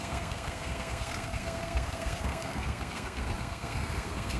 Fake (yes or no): yes